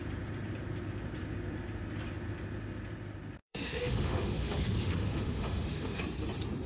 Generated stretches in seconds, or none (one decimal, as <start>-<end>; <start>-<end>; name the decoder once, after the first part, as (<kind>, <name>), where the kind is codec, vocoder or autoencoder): 3.4-6.0 (autoencoder, DAC-VAE)